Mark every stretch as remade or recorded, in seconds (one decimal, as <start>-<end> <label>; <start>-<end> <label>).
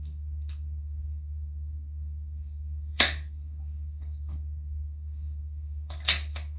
0.0-6.6 remade